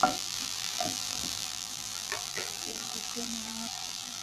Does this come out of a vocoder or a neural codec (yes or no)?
yes